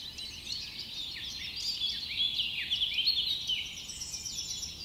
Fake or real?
real